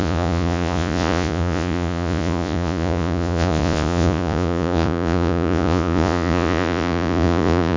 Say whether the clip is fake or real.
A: fake